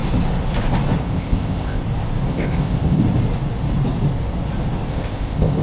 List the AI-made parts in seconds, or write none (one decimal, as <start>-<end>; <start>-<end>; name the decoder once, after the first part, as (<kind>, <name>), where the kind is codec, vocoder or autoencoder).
1.0-1.8 (codec, ZipCodec); 2.3-3.0; 4.9-5.6